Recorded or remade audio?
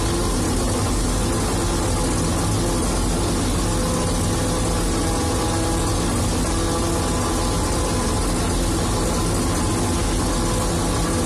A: recorded